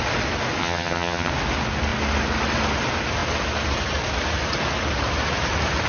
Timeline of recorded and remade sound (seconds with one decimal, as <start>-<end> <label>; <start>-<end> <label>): 0.0-0.6 recorded; 0.6-1.3 remade; 1.3-5.9 recorded